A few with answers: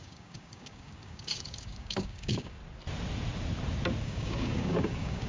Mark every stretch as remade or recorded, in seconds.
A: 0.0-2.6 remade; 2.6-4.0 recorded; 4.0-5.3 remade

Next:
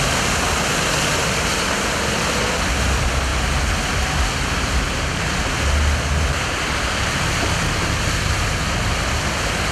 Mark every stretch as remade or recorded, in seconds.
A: 0.0-9.7 recorded